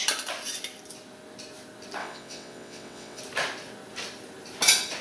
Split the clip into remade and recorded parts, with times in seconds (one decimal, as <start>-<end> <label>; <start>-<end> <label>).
0.0-2.0 recorded; 2.0-3.2 remade; 3.2-5.0 recorded